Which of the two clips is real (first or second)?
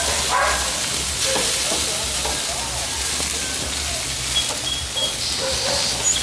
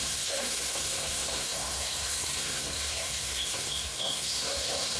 first